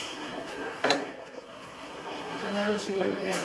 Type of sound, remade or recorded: remade